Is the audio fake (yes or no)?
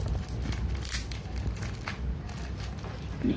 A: no